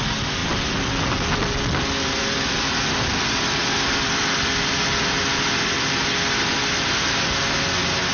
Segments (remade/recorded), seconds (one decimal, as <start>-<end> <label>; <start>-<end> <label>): 0.0-8.1 recorded